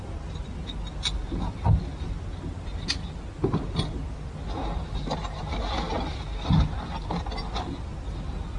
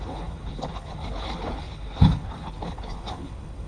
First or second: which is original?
first